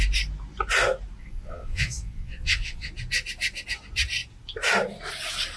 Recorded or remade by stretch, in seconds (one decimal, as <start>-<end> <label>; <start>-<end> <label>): 0.0-1.2 recorded; 1.2-2.9 remade; 2.9-5.6 recorded